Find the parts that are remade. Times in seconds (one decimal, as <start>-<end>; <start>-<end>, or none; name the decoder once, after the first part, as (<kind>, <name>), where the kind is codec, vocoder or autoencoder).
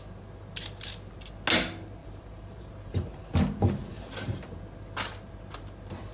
2.0-3.2 (vocoder, BigVGAN v2); 3.9-4.4